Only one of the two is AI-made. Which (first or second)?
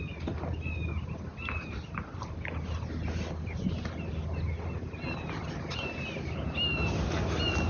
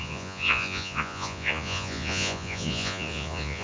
second